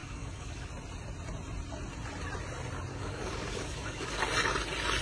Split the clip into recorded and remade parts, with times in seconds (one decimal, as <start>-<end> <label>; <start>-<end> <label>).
0.0-0.7 remade; 0.7-2.9 recorded; 2.9-4.2 remade; 4.2-5.0 recorded